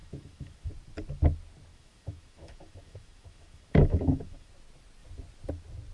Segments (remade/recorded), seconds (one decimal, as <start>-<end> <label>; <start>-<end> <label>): 0.0-0.7 remade; 0.7-1.7 recorded; 1.7-4.5 remade; 4.5-5.9 recorded